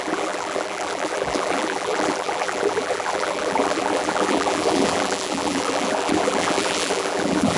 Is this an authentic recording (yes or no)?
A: no